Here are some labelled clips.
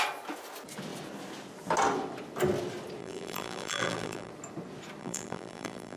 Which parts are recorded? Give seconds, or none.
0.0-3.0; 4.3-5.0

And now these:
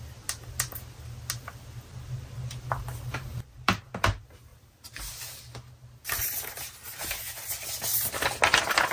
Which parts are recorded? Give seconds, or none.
0.0-3.3; 3.8-4.5; 5.4-8.9

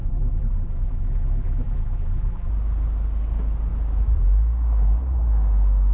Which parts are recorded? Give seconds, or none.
2.5-5.9

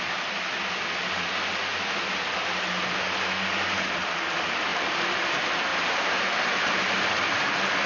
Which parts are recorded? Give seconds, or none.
0.0-4.7; 5.3-5.7; 7.1-7.9

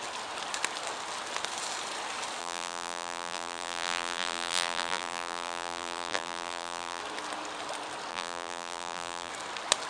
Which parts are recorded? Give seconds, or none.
0.0-2.4; 7.0-8.1; 9.3-9.9

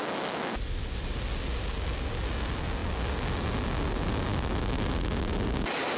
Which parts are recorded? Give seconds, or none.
0.0-6.0

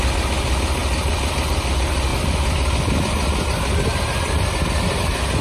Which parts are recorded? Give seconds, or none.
0.0-5.4